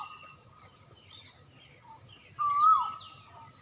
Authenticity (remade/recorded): recorded